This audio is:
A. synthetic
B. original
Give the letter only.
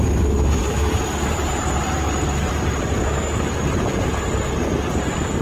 A